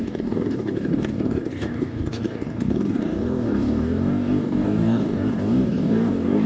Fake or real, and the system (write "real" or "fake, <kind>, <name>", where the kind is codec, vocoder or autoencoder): fake, codec, DAC